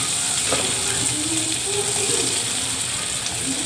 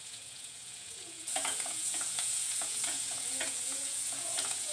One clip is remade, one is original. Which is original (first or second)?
first